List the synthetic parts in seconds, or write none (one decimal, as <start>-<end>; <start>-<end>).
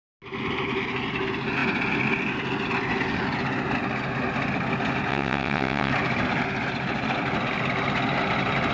5.1-5.9